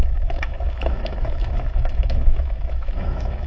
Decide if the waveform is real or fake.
fake